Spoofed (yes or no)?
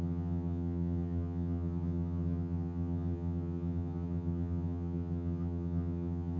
yes